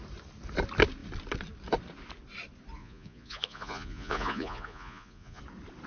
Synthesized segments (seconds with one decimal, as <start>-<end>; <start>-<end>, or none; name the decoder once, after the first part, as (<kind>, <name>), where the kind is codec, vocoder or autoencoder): 2.8-5.4 (vocoder, Vocos)